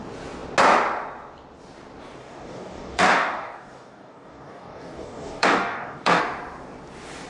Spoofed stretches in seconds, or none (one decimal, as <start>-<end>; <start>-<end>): 2.2-6.2